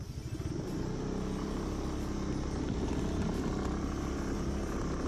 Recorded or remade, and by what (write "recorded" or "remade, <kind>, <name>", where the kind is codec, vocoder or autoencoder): recorded